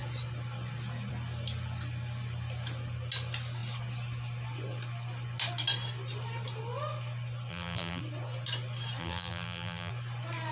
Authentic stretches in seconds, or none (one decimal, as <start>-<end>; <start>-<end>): 0.0-7.5; 8.0-9.0; 9.9-10.5